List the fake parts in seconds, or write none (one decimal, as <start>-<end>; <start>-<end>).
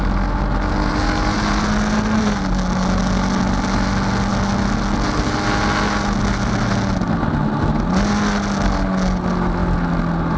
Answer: none